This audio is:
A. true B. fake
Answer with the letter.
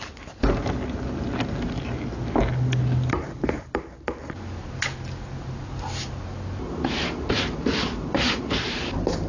A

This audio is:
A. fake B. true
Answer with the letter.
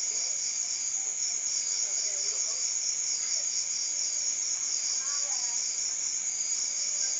B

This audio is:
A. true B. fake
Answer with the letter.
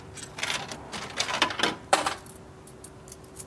A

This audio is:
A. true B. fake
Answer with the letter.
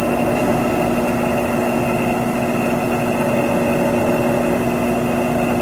A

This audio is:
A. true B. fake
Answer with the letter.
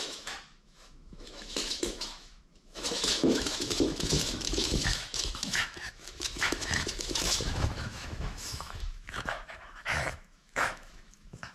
B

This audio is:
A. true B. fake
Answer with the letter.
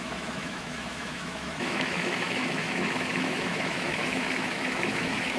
B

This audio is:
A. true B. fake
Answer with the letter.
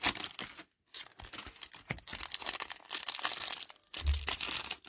A